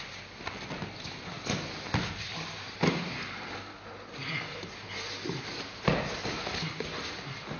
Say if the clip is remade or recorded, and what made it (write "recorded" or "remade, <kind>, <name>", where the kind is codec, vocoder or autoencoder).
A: recorded